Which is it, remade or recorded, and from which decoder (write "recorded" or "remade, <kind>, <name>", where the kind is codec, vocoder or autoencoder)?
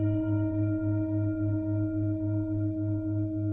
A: remade, autoencoder, DAC-VAE